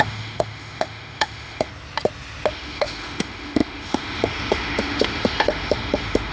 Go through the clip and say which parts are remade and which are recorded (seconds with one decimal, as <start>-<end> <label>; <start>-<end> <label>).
0.0-1.7 remade; 1.7-2.5 recorded; 2.5-6.3 remade